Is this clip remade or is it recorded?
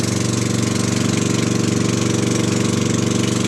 recorded